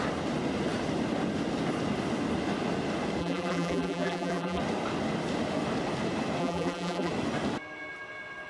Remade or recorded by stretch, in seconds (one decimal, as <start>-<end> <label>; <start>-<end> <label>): 0.0-3.2 recorded; 3.2-4.6 remade; 4.6-6.4 recorded; 6.4-7.1 remade; 7.1-8.5 recorded

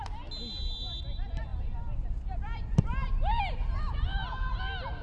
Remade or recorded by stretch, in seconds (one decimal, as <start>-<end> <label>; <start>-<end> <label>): 0.0-1.5 recorded; 1.5-4.5 remade; 4.5-5.0 recorded

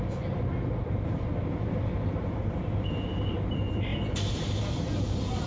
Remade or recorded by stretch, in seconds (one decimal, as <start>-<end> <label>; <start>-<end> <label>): 0.0-3.9 remade; 3.9-4.6 recorded; 4.6-5.5 remade

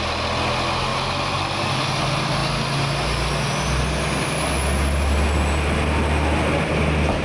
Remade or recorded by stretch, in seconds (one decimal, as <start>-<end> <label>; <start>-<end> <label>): 0.0-7.2 recorded